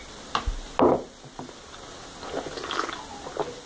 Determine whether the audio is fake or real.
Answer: real